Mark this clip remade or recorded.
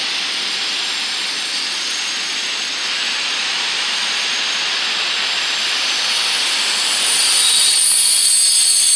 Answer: recorded